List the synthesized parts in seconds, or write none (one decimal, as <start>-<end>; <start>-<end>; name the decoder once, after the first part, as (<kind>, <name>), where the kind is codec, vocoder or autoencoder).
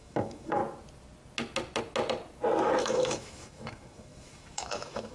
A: 0.0-0.6 (autoencoder, DAC-VAE); 2.8-5.1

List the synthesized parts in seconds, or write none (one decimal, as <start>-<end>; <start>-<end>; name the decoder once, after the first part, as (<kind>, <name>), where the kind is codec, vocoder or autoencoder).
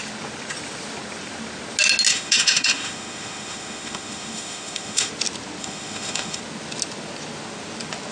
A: 2.1-5.1 (autoencoder, DAC-VAE); 5.6-6.4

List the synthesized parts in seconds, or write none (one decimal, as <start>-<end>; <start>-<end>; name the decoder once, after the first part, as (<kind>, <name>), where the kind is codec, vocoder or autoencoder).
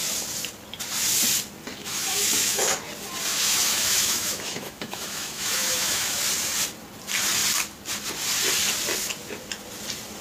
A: 1.8-2.6 (autoencoder, DAC-VAE); 3.3-6.2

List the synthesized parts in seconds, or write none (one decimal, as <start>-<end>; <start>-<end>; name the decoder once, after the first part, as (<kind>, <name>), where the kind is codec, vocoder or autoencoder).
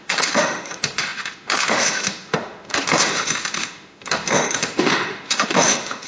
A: 0.0-6.1 (autoencoder, DAC-VAE)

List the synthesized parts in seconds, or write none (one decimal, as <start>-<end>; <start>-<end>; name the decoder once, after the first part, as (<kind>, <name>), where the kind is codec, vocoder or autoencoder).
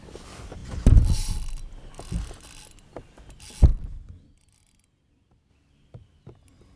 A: none